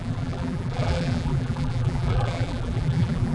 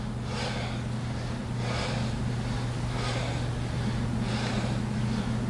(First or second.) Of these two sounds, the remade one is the first